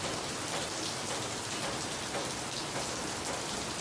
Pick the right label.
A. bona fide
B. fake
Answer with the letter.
B